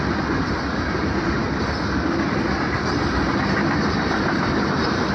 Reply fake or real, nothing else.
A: real